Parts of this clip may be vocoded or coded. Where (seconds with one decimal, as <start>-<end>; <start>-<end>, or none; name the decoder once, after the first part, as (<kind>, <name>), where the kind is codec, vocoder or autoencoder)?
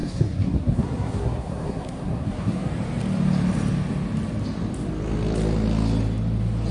0.0-2.7 (codec, SNAC)